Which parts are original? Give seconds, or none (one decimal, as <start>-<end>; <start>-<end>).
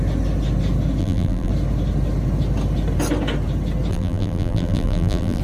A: 0.0-1.0; 1.5-3.9